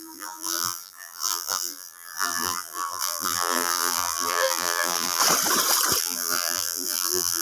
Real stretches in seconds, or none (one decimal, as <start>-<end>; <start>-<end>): 5.2-6.0